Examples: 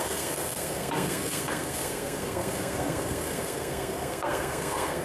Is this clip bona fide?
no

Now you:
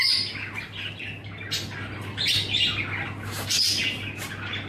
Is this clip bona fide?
yes